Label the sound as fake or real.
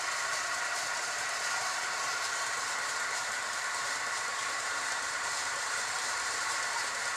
fake